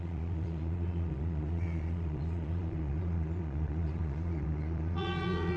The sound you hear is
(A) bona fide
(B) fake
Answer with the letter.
B